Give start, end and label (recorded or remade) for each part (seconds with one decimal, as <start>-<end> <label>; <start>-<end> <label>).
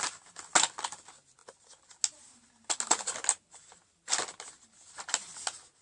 0.0-5.8 recorded